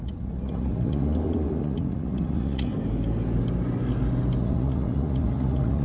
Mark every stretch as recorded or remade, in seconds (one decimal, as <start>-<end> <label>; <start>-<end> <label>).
0.0-2.7 remade; 2.7-4.4 recorded; 4.4-5.8 remade